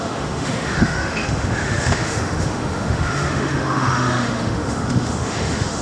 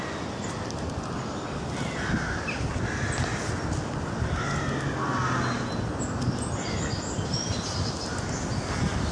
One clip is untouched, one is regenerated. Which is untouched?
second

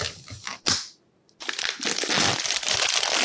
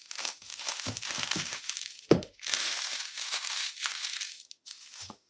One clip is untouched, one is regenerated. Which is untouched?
first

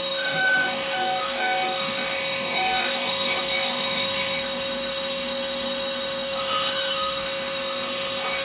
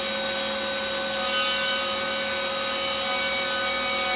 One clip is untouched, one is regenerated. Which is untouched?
second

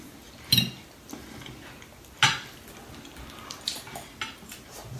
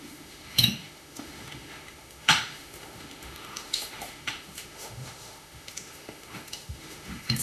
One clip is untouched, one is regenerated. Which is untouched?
first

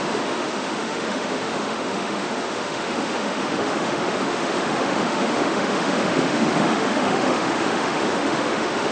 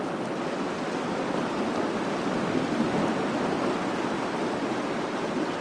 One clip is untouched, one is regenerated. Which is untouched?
second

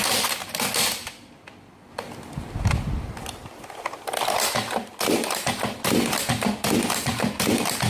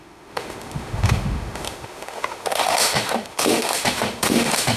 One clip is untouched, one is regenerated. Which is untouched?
first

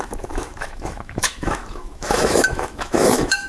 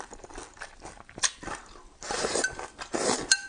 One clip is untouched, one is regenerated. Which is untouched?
second